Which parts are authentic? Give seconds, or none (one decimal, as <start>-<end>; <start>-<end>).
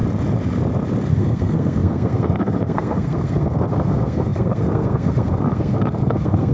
0.0-1.1